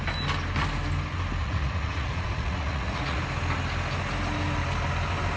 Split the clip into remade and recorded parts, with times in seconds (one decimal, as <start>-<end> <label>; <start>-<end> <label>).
0.0-1.4 recorded; 1.4-3.2 remade; 3.2-5.4 recorded